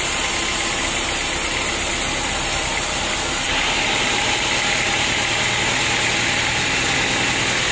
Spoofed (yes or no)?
no